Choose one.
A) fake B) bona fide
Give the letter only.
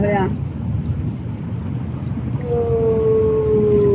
B